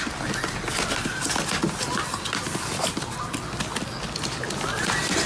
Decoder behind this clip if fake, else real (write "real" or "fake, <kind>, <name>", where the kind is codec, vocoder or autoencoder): real